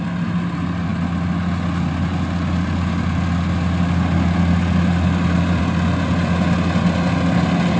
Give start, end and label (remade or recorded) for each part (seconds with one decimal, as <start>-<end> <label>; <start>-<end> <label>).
0.0-7.8 recorded